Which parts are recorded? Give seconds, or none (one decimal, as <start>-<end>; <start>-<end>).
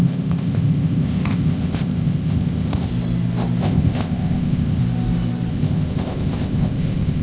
2.9-3.6; 4.8-5.5